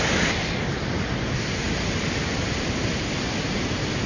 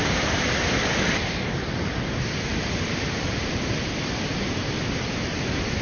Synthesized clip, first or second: second